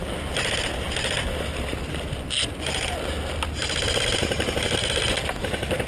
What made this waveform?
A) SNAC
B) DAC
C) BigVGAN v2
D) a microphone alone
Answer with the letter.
D